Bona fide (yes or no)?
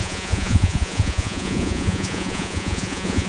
no